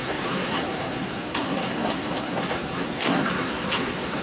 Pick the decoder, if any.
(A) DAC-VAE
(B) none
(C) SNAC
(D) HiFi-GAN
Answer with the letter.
C